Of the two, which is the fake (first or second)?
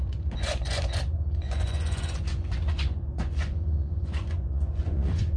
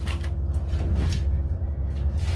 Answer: first